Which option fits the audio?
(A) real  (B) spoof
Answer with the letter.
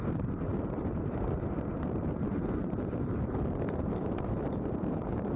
B